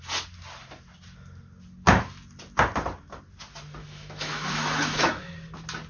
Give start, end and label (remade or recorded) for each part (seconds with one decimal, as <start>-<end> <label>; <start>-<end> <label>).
0.0-3.8 recorded; 3.8-5.3 remade; 5.3-5.9 recorded